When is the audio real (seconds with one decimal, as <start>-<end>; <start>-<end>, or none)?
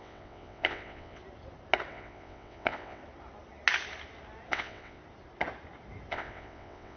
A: 1.2-1.9; 3.0-4.5; 5.0-6.1